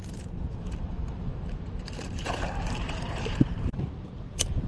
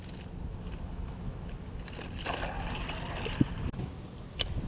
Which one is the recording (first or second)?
second